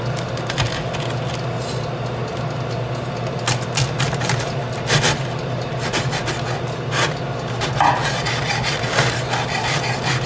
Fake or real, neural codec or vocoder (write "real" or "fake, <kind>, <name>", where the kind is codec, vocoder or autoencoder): real